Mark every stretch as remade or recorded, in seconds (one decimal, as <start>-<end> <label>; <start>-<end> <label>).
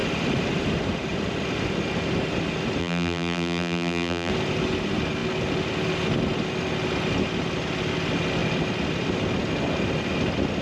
0.0-2.8 recorded; 2.8-4.3 remade; 4.3-10.6 recorded